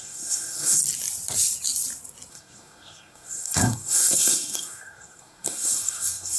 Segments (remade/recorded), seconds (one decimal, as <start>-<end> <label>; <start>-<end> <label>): 0.0-0.8 remade; 0.8-2.3 recorded; 2.3-6.4 remade